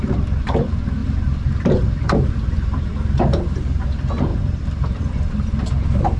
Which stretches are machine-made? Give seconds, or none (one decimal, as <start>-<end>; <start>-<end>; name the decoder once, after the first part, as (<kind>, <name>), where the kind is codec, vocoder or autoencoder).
1.0-3.2 (vocoder, BigVGAN v2); 4.3-5.0